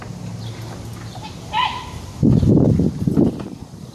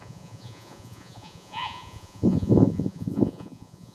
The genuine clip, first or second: first